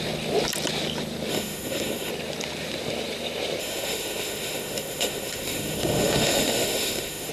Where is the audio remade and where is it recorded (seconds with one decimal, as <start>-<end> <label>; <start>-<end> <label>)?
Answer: 0.0-1.3 recorded; 1.3-2.1 remade; 2.1-3.6 recorded; 3.6-7.3 remade